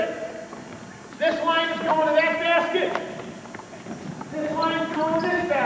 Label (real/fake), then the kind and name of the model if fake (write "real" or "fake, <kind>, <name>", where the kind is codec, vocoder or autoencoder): real